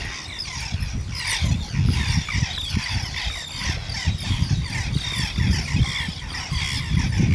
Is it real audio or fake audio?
real